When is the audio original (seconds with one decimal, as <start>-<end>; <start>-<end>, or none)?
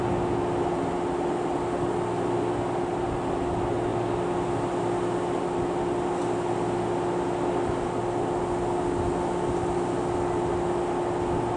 0.0-11.6